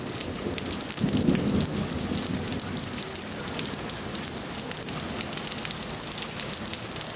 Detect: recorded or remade recorded